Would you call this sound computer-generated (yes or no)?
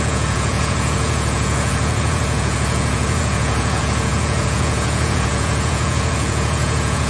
yes